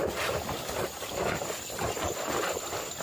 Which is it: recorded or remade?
remade